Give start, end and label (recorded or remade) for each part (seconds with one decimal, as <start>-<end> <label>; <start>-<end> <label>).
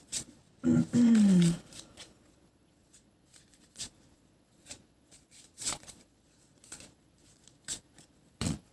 0.0-0.4 remade; 0.4-1.2 recorded; 1.2-8.7 remade